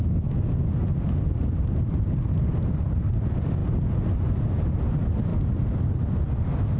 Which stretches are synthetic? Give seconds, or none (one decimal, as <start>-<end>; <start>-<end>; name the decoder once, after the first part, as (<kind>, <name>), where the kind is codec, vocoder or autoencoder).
none